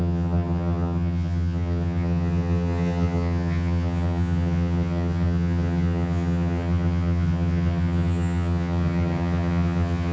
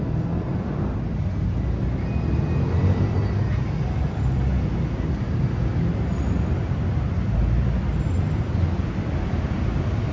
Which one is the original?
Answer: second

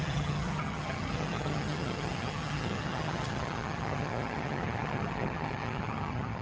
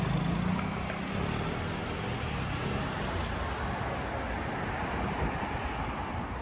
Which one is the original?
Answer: second